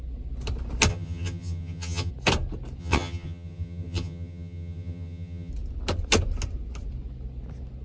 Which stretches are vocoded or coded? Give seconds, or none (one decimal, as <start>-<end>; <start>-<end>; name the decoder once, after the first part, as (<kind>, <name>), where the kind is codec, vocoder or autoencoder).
0.9-2.1 (vocoder, HiFi-GAN); 2.8-5.5